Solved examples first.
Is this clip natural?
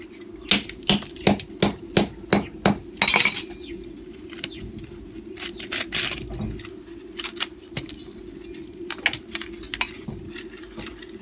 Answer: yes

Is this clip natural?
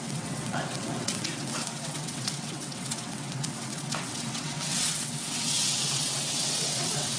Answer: no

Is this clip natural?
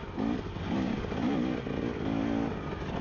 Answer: yes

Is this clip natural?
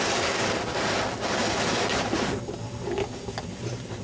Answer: yes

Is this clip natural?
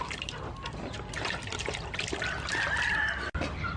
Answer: yes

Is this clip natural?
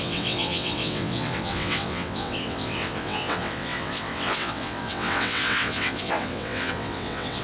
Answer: no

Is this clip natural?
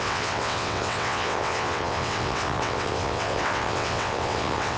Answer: no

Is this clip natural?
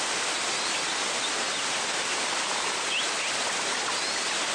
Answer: yes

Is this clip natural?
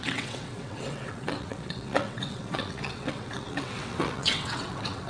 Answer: no